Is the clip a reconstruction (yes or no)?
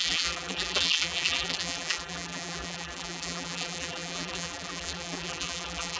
yes